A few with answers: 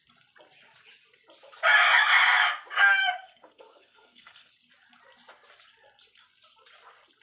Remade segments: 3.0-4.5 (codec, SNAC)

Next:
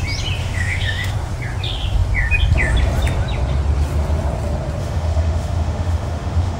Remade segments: 0.4-1.1 (autoencoder, DAC-VAE); 4.8-6.6